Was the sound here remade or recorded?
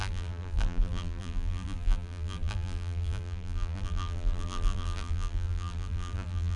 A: remade